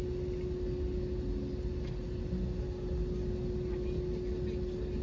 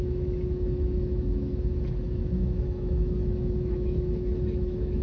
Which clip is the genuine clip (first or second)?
first